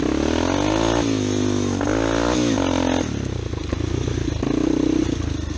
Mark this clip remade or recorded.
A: recorded